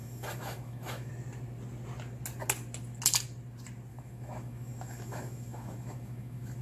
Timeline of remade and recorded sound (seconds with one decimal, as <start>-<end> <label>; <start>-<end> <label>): 0.0-1.1 remade; 1.1-3.9 recorded; 3.9-6.6 remade